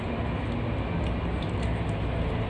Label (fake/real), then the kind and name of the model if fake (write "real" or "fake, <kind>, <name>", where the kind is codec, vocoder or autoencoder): real